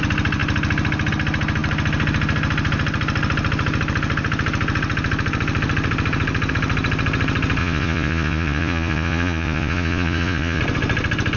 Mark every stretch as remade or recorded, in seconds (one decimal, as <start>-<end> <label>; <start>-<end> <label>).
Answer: 0.0-7.6 recorded; 7.6-10.6 remade; 10.6-11.4 recorded